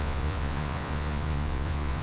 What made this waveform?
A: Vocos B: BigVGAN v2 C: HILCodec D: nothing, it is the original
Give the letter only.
A